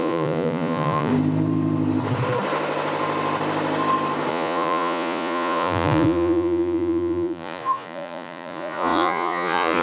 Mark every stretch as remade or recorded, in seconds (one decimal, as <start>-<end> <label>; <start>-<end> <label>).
0.0-1.1 remade; 1.1-4.3 recorded; 4.3-9.8 remade